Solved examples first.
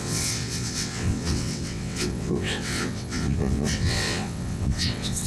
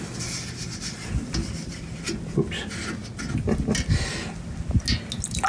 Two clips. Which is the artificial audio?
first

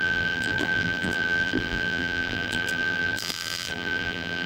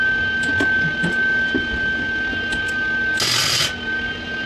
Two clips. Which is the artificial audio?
first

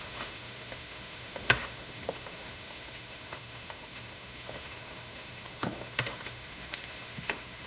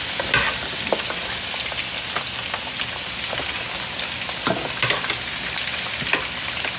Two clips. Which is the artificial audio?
first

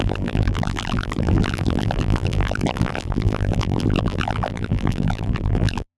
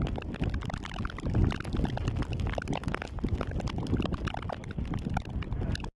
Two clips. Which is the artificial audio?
first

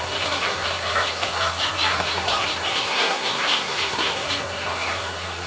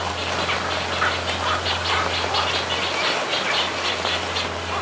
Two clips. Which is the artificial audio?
first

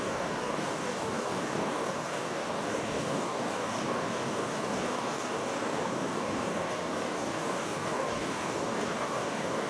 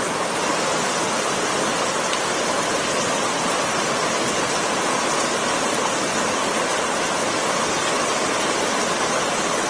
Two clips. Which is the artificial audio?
first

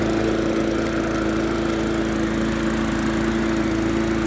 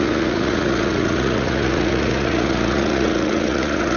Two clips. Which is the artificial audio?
second